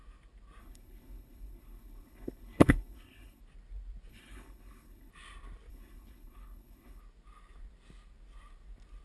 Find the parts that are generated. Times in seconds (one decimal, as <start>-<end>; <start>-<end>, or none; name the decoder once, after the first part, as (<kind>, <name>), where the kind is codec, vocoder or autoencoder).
0.6-3.4 (codec, HILCodec); 4.1-5.1; 5.7-7.0